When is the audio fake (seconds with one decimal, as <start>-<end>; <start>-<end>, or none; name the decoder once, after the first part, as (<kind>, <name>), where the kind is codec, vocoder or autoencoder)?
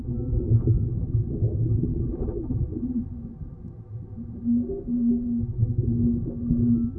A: 1.9-5.1 (vocoder, BigVGAN v2)